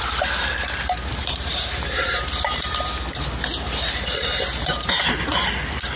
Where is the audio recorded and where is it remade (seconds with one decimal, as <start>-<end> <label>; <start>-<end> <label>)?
0.0-1.2 recorded; 1.2-2.3 remade; 2.3-4.2 recorded; 4.2-5.3 remade; 5.3-6.0 recorded